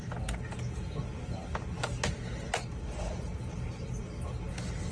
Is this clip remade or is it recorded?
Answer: recorded